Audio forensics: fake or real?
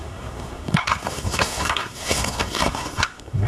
fake